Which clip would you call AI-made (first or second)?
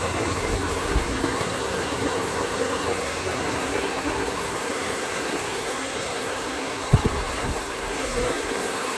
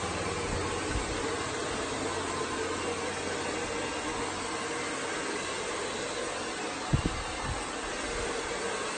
first